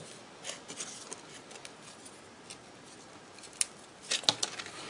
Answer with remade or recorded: recorded